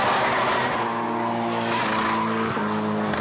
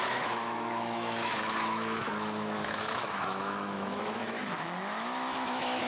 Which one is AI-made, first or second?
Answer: second